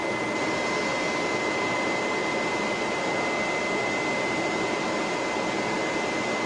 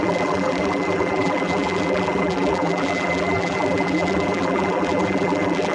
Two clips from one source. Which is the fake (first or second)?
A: second